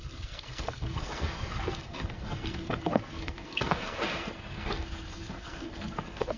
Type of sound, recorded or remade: remade